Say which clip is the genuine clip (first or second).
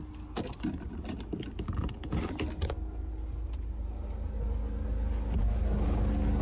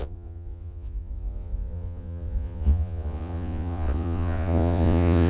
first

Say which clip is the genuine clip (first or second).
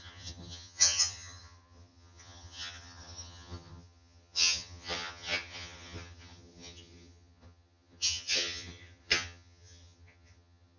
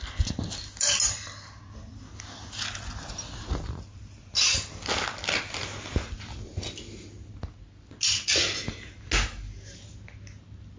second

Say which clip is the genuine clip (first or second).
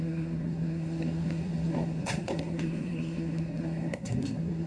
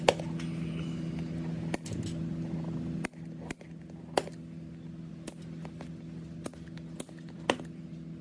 second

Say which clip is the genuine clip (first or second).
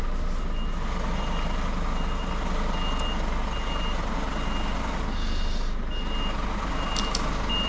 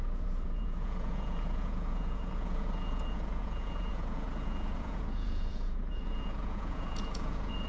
first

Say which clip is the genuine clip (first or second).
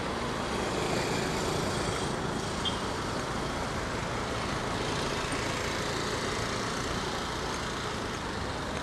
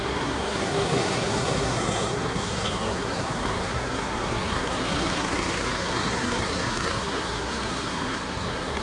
first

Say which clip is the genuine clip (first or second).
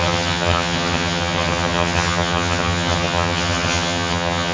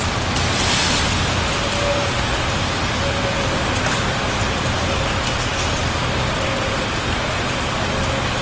second